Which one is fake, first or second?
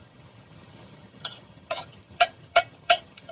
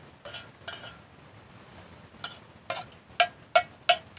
first